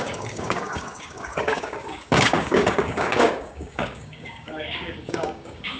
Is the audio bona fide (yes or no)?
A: no